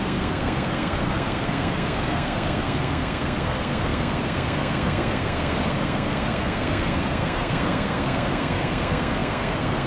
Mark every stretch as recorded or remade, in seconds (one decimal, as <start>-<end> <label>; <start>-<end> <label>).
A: 0.0-9.9 remade